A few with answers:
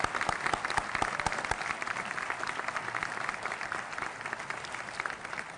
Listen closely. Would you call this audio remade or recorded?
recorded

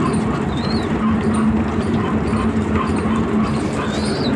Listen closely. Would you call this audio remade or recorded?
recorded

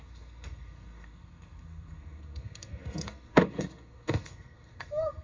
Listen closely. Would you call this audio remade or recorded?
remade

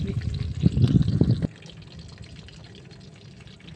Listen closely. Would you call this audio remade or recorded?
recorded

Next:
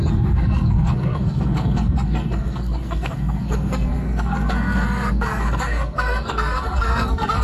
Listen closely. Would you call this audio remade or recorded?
remade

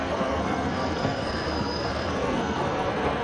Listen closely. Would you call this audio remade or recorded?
remade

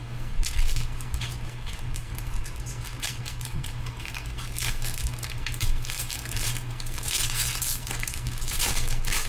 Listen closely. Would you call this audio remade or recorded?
remade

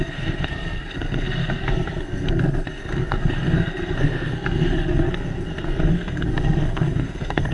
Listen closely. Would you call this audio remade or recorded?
remade